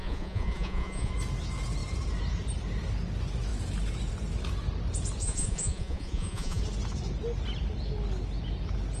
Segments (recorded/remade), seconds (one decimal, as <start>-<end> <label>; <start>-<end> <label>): 0.0-1.1 remade; 1.1-5.2 recorded; 5.2-6.6 remade; 6.6-9.0 recorded